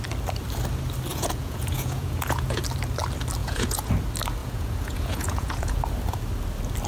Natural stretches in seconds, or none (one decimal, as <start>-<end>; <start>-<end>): 0.0-1.1; 2.6-3.4; 3.9-4.4; 5.8-6.9